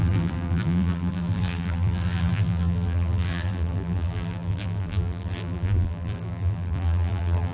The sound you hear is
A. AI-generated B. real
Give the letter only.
A